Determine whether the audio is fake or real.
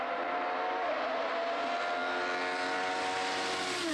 real